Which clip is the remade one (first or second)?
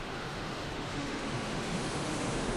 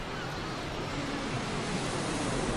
first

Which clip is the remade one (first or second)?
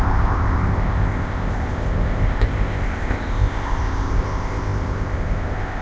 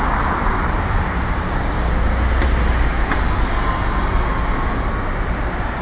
first